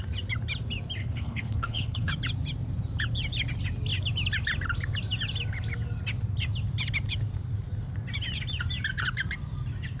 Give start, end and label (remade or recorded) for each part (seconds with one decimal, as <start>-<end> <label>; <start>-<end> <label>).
0.0-1.0 recorded; 1.0-2.1 remade; 2.1-10.0 recorded